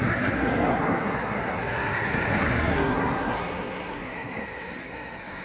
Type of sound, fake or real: fake